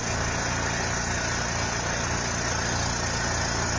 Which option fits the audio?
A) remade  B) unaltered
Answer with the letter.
B